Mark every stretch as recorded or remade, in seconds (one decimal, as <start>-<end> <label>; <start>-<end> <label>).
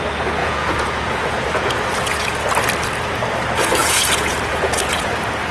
0.0-0.4 recorded; 0.4-2.4 remade; 2.4-3.8 recorded; 3.8-5.1 remade; 5.1-5.5 recorded